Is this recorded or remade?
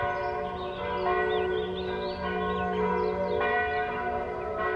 recorded